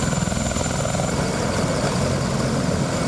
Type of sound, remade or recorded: recorded